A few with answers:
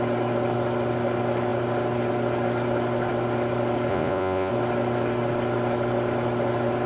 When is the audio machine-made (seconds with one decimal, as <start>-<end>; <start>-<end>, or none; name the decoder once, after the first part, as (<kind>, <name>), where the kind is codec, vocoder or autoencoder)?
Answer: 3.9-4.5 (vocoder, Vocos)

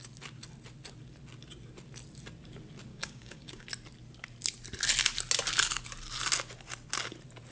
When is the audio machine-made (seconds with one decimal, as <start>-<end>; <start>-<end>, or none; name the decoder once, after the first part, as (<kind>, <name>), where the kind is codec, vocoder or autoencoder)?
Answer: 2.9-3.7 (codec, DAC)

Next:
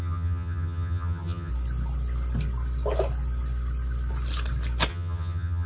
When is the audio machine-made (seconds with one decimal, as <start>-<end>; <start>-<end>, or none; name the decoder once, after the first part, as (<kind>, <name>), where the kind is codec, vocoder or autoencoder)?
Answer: 0.0-1.5 (vocoder, HiFi-GAN); 4.9-5.7

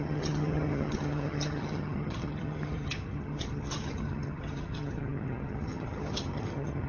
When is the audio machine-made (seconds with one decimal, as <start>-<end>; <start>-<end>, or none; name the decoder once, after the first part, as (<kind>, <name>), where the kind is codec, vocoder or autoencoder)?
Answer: 0.0-6.9 (vocoder, HiFi-GAN)

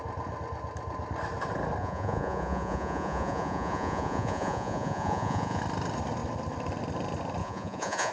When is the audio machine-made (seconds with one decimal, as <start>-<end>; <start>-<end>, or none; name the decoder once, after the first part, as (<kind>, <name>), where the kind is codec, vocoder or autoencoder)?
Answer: 1.8-5.6 (vocoder, Vocos); 7.4-8.1